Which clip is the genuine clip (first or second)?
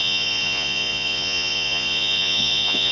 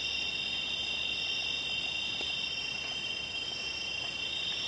second